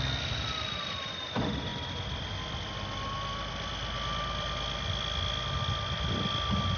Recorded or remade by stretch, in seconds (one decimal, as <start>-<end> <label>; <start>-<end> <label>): 0.0-6.8 recorded